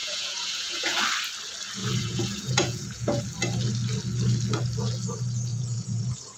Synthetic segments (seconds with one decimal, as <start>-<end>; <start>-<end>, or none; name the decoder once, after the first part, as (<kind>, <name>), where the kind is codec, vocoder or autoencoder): 0.0-1.0 (vocoder, Vocos); 1.8-3.2; 5.5-6.4